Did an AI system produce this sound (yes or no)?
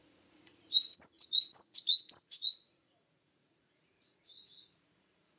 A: yes